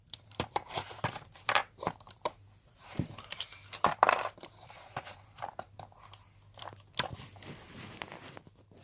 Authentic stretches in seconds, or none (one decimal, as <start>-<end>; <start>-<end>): 5.5-8.8

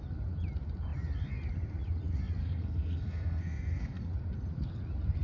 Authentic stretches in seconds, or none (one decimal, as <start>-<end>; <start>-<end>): 0.0-2.4; 4.1-5.2

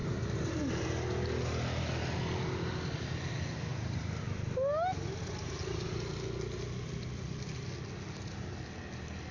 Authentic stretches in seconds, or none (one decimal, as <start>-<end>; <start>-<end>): 0.9-3.7; 4.2-9.3

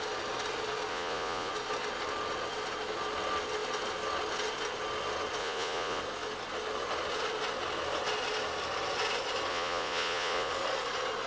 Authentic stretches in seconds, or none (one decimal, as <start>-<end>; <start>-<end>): 0.0-0.9; 1.5-5.4; 6.0-9.5; 10.5-11.3